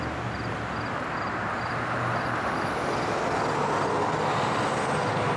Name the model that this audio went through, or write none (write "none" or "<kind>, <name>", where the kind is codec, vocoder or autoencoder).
none